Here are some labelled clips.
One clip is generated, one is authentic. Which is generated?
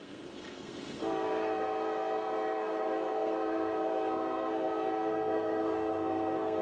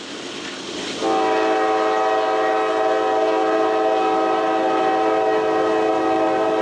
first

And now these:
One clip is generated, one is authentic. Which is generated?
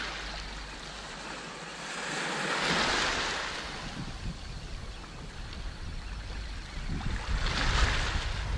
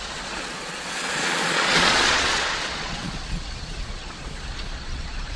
second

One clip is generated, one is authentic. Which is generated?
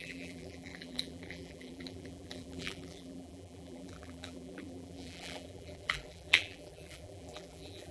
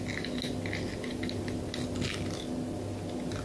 first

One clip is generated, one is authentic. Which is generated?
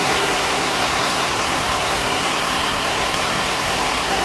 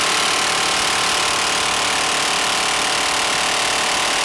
first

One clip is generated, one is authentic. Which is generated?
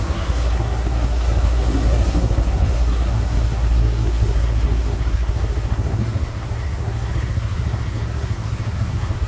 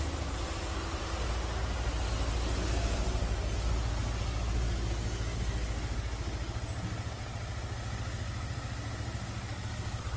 first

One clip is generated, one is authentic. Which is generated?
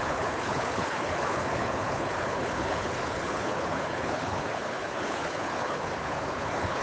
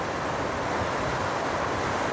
first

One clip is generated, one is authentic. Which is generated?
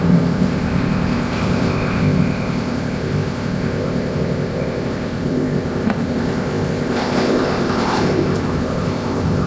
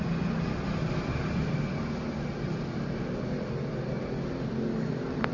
first